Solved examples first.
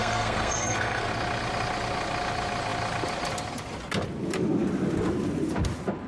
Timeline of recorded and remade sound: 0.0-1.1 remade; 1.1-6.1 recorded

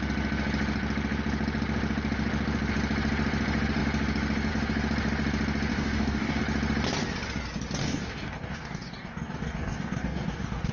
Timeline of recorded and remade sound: 0.0-5.7 recorded; 5.7-6.4 remade; 6.4-7.8 recorded; 7.8-10.7 remade

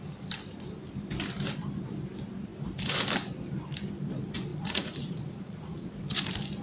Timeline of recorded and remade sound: 0.0-4.5 recorded; 4.5-5.9 remade; 5.9-6.6 recorded

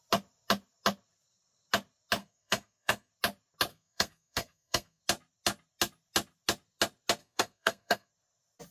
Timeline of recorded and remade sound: 0.0-2.2 recorded; 2.2-3.1 remade; 3.1-3.7 recorded; 3.7-5.0 remade; 5.0-7.2 recorded; 7.2-8.1 remade; 8.1-8.7 recorded

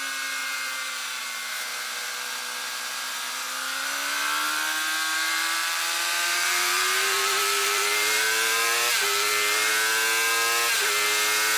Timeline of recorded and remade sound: 0.0-0.4 recorded; 0.4-1.2 remade; 1.2-5.1 recorded; 5.1-9.7 remade; 9.7-11.6 recorded

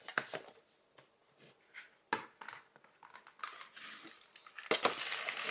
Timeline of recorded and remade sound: 0.0-5.5 recorded

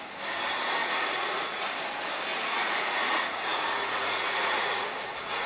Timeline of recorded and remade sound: 0.0-0.8 recorded; 0.8-1.7 remade; 1.7-2.3 recorded; 2.3-5.5 remade

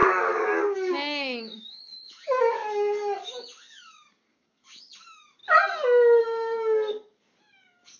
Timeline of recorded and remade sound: 0.0-5.4 remade; 5.4-6.2 recorded; 6.2-8.0 remade